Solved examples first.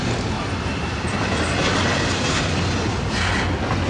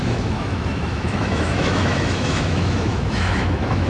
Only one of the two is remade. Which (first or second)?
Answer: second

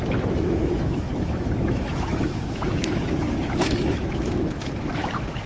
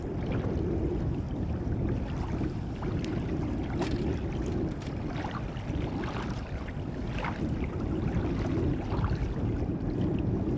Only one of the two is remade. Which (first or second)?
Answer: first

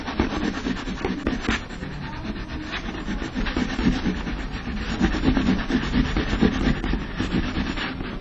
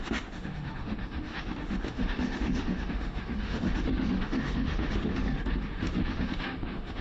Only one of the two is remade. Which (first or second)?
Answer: second